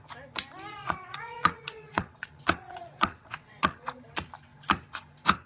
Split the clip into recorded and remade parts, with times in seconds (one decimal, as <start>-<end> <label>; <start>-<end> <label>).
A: 0.0-0.7 recorded; 0.7-4.0 remade; 4.0-5.5 recorded